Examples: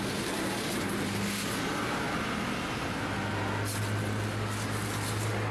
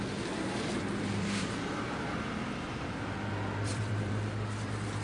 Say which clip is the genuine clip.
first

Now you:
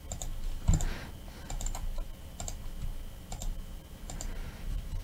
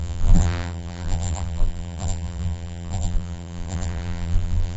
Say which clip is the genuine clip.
first